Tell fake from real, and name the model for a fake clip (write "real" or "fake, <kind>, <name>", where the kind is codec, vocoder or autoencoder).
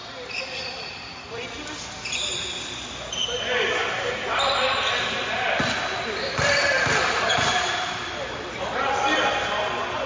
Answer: real